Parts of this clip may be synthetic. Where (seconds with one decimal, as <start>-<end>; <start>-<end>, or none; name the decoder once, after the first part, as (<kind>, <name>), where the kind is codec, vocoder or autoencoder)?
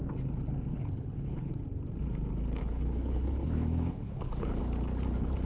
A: 0.7-1.5 (codec, HILCodec); 2.6-4.6